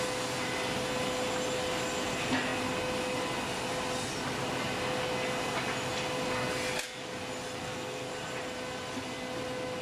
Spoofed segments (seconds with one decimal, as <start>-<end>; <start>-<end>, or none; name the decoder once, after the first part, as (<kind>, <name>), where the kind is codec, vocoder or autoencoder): 7.6-8.1 (codec, SNAC)